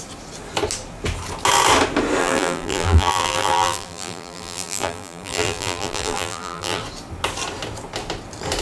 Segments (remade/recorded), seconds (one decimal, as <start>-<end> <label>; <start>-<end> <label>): 0.0-2.2 recorded; 2.2-6.8 remade; 6.8-8.6 recorded